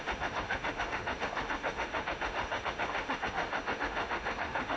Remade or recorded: remade